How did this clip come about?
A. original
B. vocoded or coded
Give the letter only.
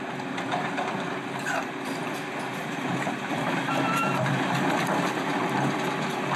B